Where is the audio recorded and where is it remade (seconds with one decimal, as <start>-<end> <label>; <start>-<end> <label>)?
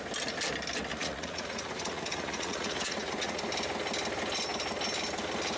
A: 0.0-0.9 recorded; 0.9-3.4 remade; 3.4-5.6 recorded